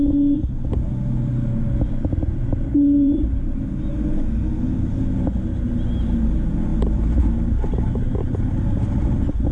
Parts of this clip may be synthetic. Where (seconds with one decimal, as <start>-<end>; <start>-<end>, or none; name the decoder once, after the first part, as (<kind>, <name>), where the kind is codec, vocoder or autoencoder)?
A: 2.4-3.9 (vocoder, BigVGAN v2); 6.7-7.2